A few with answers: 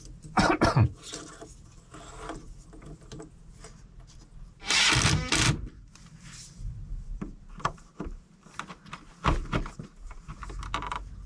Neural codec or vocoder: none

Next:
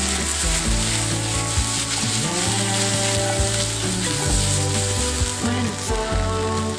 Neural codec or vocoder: none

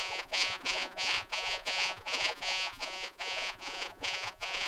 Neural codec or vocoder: vocoder, Vocos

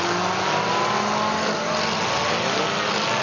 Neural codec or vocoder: none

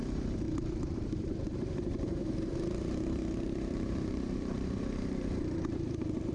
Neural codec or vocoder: vocoder, BigVGAN v2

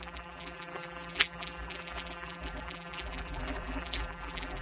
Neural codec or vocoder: vocoder, BigVGAN v2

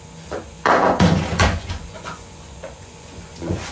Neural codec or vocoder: vocoder, Vocos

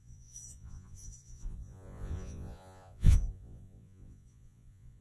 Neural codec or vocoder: vocoder, Vocos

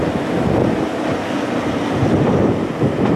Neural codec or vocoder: none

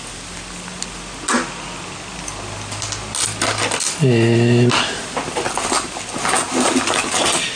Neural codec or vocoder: none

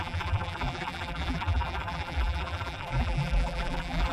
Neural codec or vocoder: vocoder, BigVGAN v2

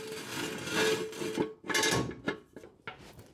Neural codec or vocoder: none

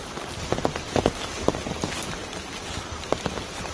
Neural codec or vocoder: none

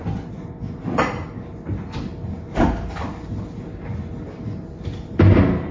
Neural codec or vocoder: none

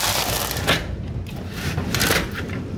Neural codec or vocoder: none